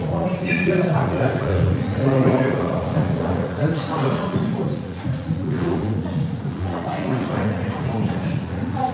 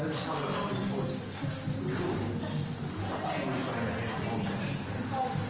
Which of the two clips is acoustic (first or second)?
second